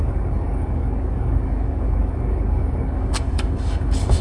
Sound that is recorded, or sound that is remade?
remade